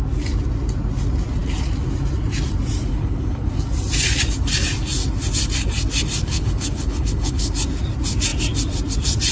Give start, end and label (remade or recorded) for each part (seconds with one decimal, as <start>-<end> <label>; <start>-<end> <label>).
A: 0.0-2.9 recorded; 2.9-3.5 remade; 3.5-6.2 recorded; 6.2-7.5 remade; 7.5-9.3 recorded